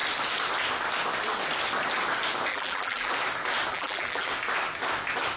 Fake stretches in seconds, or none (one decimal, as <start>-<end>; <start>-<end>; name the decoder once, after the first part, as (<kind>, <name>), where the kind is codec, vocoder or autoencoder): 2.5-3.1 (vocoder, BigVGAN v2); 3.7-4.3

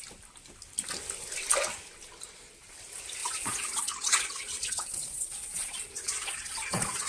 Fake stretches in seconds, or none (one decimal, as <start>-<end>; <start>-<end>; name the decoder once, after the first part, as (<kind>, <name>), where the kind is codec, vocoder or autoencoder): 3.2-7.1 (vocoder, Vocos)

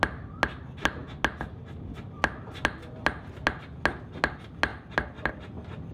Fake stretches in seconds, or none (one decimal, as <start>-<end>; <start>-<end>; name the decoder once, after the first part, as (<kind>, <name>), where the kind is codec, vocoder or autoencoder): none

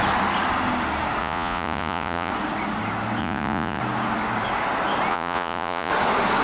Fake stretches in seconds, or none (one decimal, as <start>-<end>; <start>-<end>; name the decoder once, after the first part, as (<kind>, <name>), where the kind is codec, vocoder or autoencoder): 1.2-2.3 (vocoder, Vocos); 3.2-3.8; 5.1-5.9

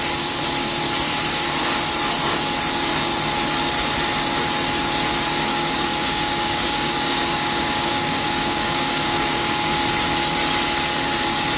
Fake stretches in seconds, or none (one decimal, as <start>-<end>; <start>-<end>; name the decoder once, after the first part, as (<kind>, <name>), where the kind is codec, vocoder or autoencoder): 5.5-9.8 (codec, DAC)

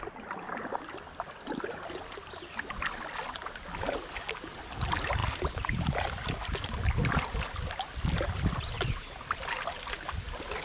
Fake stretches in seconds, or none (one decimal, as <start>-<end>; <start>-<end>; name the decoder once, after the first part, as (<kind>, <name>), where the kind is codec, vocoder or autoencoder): none